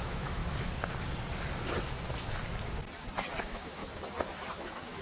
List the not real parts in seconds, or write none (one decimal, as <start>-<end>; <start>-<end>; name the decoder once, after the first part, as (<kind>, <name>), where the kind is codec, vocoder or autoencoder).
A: 0.0-0.4 (autoencoder, DAC-VAE); 3.4-3.8; 4.6-5.0